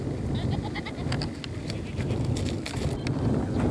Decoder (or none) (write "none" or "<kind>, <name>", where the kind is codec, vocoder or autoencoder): none